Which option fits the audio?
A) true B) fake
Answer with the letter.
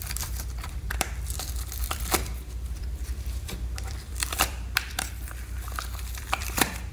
B